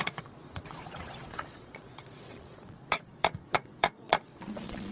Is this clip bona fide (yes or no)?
no